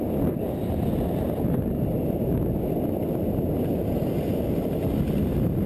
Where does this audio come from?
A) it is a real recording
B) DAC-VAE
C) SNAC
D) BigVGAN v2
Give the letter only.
A